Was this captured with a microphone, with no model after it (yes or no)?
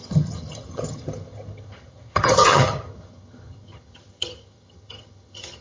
no